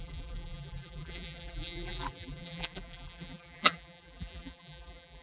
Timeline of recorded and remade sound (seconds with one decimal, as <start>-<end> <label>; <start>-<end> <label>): 0.0-5.2 remade

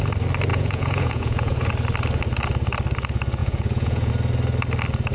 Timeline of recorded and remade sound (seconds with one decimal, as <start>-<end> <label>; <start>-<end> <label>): 0.0-0.5 recorded; 0.5-1.7 remade; 1.7-3.4 recorded; 3.4-4.1 remade; 4.1-5.1 recorded

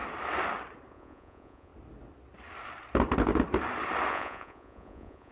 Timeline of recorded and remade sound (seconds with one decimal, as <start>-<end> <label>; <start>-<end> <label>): 0.0-0.9 recorded; 0.9-1.7 remade; 1.7-4.1 recorded; 4.1-5.3 remade

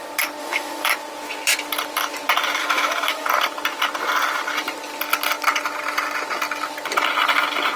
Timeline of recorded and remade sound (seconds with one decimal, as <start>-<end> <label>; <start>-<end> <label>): 0.0-0.4 recorded; 0.4-0.9 remade; 0.9-2.6 recorded; 2.6-3.3 remade; 3.3-7.8 recorded

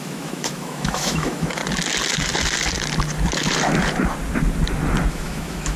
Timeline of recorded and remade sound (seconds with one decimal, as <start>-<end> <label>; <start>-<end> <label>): 0.0-1.6 remade; 1.6-5.1 recorded; 5.1-5.8 remade